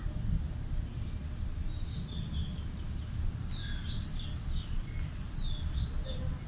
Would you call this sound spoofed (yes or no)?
no